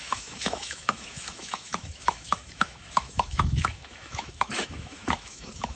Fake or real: fake